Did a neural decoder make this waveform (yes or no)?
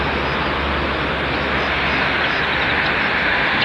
yes